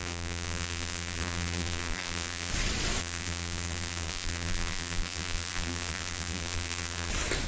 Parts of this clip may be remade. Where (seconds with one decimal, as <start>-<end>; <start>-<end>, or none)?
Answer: 0.0-2.5; 3.0-7.1